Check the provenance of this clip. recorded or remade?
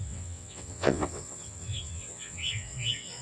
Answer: remade